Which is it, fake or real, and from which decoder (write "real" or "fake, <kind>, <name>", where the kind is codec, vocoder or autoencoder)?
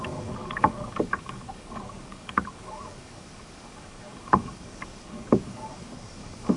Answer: fake, codec, DAC